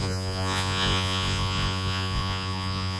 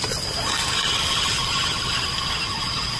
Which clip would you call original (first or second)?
second